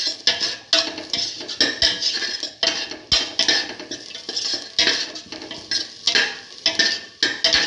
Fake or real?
real